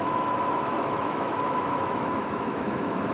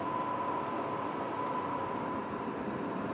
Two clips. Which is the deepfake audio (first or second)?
first